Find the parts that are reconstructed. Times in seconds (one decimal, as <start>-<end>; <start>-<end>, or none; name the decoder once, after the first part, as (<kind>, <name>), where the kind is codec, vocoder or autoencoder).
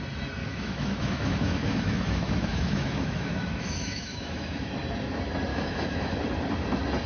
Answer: 0.4-4.7 (autoencoder, DAC-VAE); 5.5-6.2